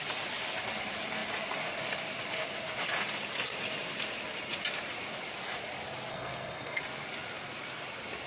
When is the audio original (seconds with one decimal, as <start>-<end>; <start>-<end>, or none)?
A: 0.0-6.1; 6.8-8.3